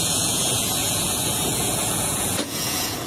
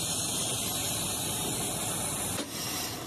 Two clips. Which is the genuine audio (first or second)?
second